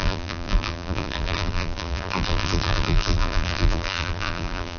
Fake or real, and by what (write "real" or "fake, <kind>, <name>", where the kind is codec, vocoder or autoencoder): fake, vocoder, BigVGAN v2